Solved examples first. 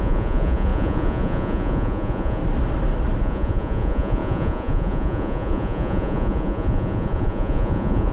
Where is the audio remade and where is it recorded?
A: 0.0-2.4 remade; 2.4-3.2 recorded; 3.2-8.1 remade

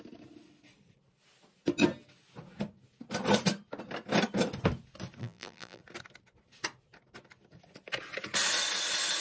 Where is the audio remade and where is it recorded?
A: 0.0-5.2 recorded; 5.2-5.8 remade; 5.8-9.2 recorded

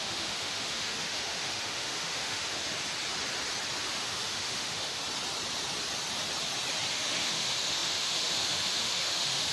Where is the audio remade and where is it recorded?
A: 0.0-2.6 remade; 2.6-3.8 recorded; 3.8-5.0 remade; 5.0-6.9 recorded; 6.9-9.5 remade

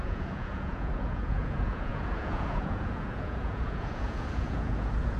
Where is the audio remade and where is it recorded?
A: 0.0-5.2 remade

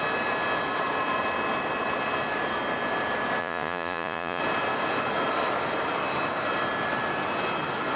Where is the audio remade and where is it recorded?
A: 0.0-3.4 recorded; 3.4-4.4 remade; 4.4-8.0 recorded

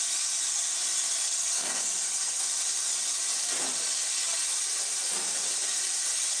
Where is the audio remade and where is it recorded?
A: 0.0-1.4 recorded; 1.4-2.6 remade; 2.6-6.4 recorded

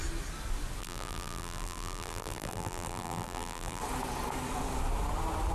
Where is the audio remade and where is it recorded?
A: 0.0-0.8 recorded; 0.8-3.8 remade; 3.8-5.5 recorded

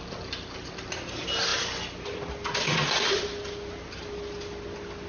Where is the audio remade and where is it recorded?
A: 0.0-5.1 recorded